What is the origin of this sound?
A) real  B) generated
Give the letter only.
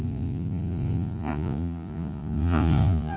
B